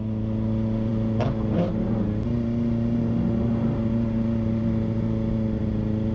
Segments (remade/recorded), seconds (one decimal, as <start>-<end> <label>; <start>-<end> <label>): 0.0-6.1 recorded